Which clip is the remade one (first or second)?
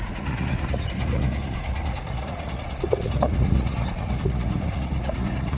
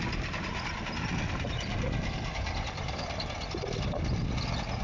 first